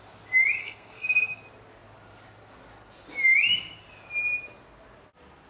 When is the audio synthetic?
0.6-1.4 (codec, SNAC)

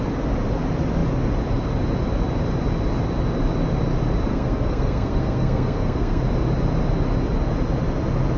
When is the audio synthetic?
4.3-6.2 (codec, SNAC)

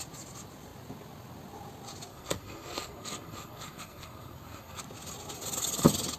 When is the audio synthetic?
2.1-4.8 (codec, SNAC)

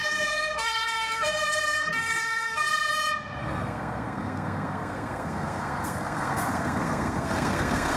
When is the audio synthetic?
0.0-2.9 (codec, SNAC); 3.4-8.0

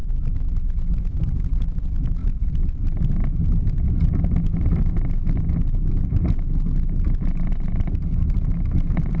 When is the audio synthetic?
none

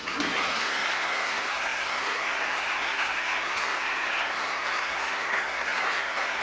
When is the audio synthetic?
0.0-6.4 (codec, SNAC)